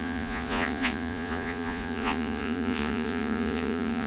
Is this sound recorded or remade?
remade